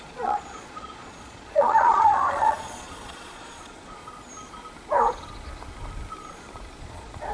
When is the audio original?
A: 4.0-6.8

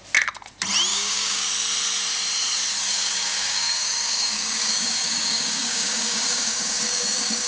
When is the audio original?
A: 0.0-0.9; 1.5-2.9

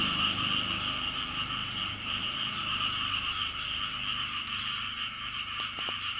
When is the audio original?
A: 0.0-1.6; 3.8-4.8

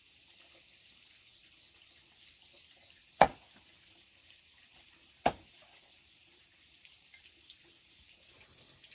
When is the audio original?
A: 0.0-4.2; 7.1-8.9

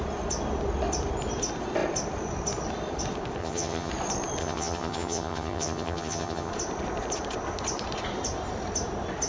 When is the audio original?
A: 0.0-3.4; 3.9-4.4; 6.5-9.3